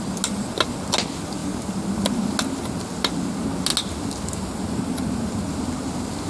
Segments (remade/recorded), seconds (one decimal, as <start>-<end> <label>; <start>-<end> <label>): 0.0-6.3 recorded